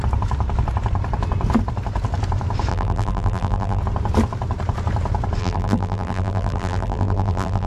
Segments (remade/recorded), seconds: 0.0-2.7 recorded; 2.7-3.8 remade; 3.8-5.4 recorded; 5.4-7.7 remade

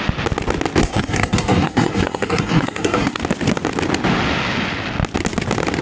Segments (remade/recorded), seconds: 0.0-0.8 recorded; 0.8-3.2 remade; 3.2-5.8 recorded

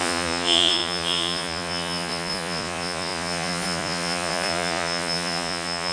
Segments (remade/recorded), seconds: 0.0-5.9 remade

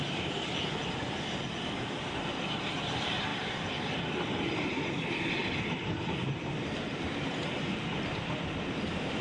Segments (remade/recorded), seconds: 0.0-9.2 recorded

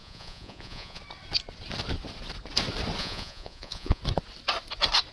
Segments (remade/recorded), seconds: 0.0-1.0 remade; 1.0-3.0 recorded; 3.0-4.0 remade; 4.0-5.1 recorded